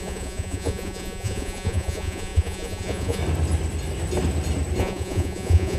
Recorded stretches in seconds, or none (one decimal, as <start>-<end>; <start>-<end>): 3.2-4.8